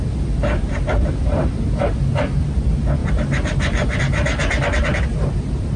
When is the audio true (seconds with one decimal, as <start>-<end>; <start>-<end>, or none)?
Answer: 0.0-0.4; 1.5-5.8